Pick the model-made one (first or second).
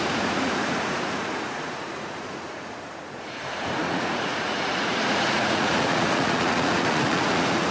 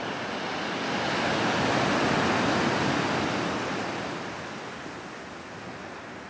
first